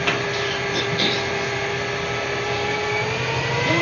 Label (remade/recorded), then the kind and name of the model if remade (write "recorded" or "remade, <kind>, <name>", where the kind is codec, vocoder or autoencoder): recorded